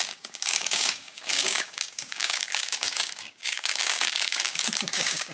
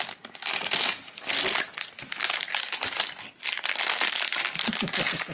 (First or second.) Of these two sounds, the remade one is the first